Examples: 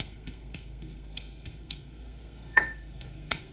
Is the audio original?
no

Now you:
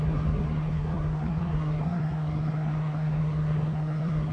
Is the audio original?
no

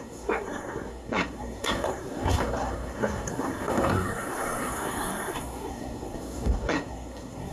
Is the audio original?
no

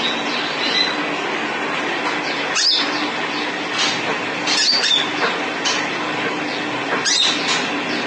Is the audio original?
yes